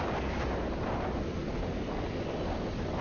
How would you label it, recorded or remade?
recorded